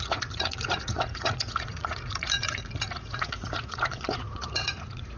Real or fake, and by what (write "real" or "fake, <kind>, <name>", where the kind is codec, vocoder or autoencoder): fake, vocoder, Vocos